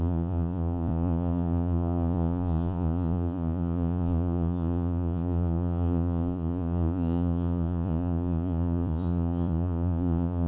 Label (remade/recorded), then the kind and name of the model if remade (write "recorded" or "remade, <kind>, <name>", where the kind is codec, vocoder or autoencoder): remade, vocoder, Vocos